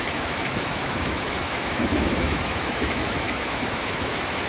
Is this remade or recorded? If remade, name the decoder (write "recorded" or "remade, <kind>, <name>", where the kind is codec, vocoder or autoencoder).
remade, autoencoder, DAC-VAE